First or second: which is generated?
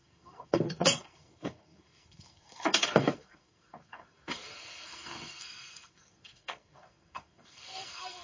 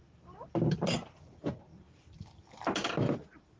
first